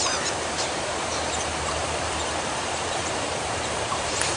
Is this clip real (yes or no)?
no